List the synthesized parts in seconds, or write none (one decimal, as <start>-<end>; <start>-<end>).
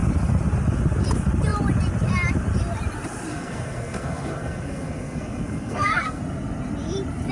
3.3-6.2